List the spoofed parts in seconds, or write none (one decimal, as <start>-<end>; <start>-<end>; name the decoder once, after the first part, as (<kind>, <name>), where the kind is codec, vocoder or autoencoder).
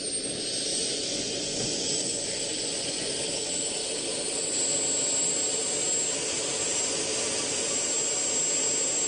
0.7-3.1 (vocoder, Vocos)